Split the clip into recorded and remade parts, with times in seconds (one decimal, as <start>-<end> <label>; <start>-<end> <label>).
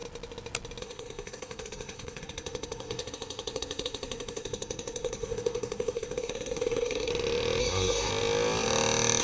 0.0-0.8 recorded; 0.8-7.1 remade; 7.1-7.6 recorded; 7.6-8.1 remade; 8.1-9.2 recorded